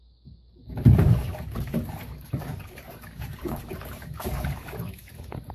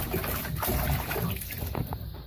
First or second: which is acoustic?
second